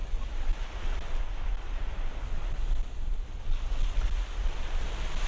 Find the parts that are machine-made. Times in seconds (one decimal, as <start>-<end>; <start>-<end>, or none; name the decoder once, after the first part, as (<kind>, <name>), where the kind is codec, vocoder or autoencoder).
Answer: none